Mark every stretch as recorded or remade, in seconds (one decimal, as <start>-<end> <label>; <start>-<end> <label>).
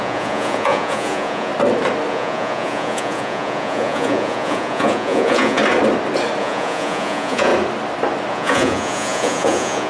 0.0-1.5 remade; 1.5-2.1 recorded; 2.1-5.6 remade; 5.6-6.4 recorded; 6.4-7.5 remade; 7.5-8.3 recorded; 8.3-9.9 remade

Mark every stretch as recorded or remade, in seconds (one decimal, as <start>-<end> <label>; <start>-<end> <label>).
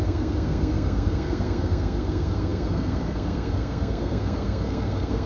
0.0-5.3 remade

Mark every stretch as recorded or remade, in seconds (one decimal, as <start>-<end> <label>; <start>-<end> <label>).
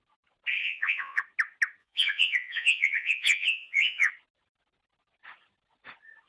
0.0-0.6 recorded; 0.6-1.2 remade; 1.2-1.8 recorded; 1.8-4.1 remade; 4.1-6.3 recorded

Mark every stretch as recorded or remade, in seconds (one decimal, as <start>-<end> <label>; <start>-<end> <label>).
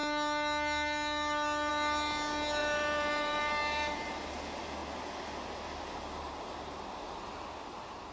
0.0-2.6 recorded; 2.6-4.1 remade; 4.1-8.1 recorded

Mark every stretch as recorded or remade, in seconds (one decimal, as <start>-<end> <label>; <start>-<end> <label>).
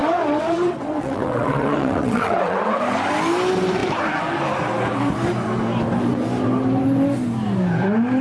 0.0-2.8 remade; 2.8-8.2 recorded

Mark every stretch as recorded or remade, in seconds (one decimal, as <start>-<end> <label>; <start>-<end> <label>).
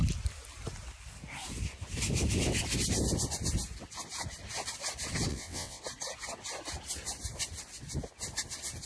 0.0-5.3 recorded; 5.3-5.8 remade; 5.8-8.9 recorded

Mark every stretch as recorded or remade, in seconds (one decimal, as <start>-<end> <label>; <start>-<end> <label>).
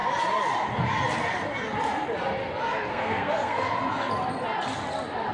0.0-2.9 recorded; 2.9-3.7 remade; 3.7-5.3 recorded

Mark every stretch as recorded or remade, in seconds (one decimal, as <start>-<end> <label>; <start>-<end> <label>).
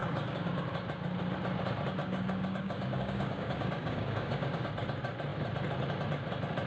0.0-0.6 remade; 0.6-2.0 recorded; 2.0-4.7 remade; 4.7-6.7 recorded